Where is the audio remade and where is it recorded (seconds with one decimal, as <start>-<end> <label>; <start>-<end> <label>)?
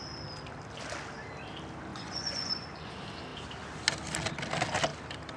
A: 0.0-1.9 recorded; 1.9-2.9 remade; 2.9-5.4 recorded